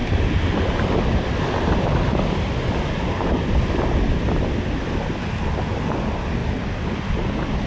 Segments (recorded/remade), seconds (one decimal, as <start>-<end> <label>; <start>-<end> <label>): 0.0-7.7 recorded